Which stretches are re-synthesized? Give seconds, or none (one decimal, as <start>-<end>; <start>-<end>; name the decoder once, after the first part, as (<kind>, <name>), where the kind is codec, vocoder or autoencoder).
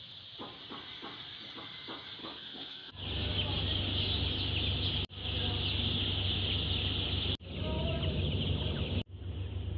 2.2-2.9 (codec, SNAC)